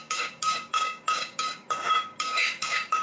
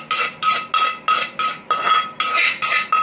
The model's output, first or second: first